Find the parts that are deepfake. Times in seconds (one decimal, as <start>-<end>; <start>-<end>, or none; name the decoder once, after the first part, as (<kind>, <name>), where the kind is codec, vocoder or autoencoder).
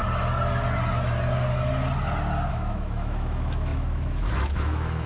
2.5-5.1 (autoencoder, DAC-VAE)